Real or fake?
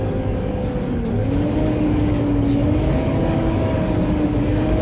fake